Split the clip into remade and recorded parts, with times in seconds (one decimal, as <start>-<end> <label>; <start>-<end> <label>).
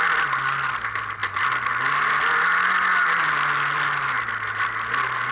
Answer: 0.0-5.3 recorded